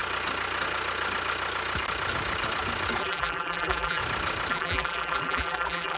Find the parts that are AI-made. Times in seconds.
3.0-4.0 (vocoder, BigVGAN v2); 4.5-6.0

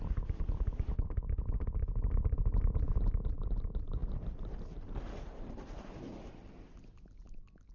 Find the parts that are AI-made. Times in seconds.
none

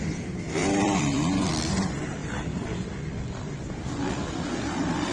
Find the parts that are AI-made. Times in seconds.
0.0-2.2 (vocoder, BigVGAN v2); 3.0-5.1

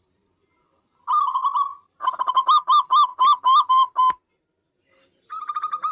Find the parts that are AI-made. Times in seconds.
1.7-2.3 (vocoder, BigVGAN v2)

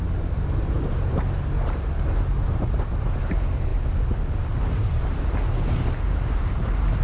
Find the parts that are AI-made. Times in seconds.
none

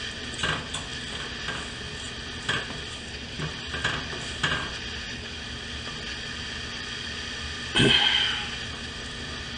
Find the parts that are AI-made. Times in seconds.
none